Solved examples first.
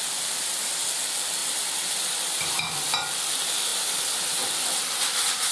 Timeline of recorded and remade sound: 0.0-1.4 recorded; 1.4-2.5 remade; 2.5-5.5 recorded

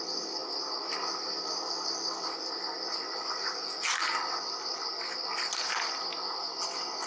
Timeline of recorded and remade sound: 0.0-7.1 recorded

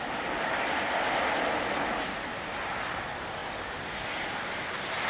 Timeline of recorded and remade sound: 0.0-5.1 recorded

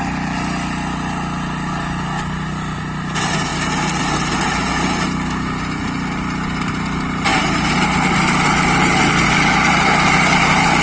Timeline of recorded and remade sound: 0.0-10.8 recorded

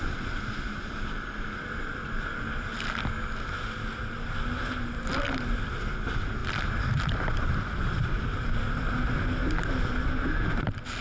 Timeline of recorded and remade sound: 0.0-6.4 recorded; 6.4-9.1 remade; 9.1-11.0 recorded

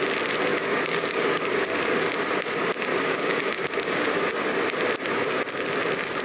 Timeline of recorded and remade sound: 0.0-0.5 recorded; 0.5-2.1 remade; 2.1-2.9 recorded; 2.9-4.1 remade; 4.1-6.2 recorded

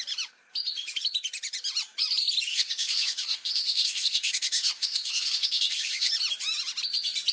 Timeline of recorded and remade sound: 0.0-2.5 recorded; 2.5-6.1 remade; 6.1-7.3 recorded

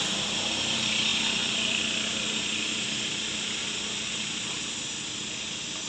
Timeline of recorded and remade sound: 0.0-1.1 recorded; 1.1-4.6 remade; 4.6-5.9 recorded